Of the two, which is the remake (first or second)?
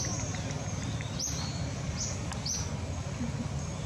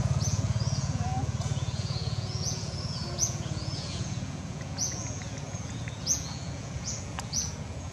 second